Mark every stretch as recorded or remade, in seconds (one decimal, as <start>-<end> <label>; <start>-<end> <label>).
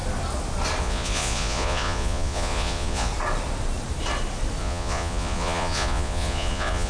0.0-0.8 recorded; 0.8-3.1 remade; 3.1-4.6 recorded; 4.6-6.9 remade